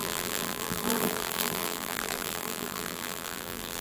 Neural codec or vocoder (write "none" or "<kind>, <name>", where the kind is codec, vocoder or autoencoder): vocoder, BigVGAN v2